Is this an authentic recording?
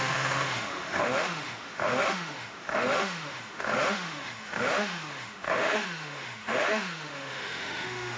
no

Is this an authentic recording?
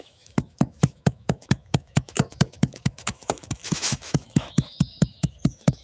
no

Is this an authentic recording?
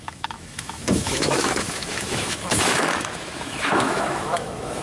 no